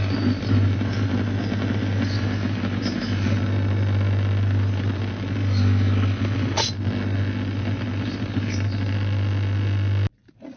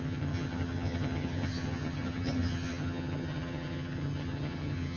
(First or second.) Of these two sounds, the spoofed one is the second